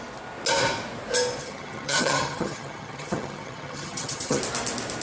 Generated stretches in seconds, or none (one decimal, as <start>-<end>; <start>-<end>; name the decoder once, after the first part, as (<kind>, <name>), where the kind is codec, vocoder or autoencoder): 1.4-4.4 (vocoder, HiFi-GAN)